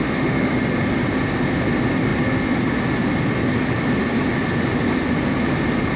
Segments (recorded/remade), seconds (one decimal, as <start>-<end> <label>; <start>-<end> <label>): 0.0-0.5 remade; 0.5-6.0 recorded